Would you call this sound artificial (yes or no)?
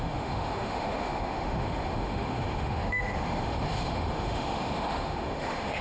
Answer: yes